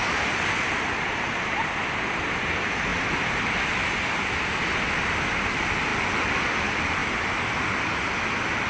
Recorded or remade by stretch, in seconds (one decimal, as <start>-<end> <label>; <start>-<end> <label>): 0.0-8.7 recorded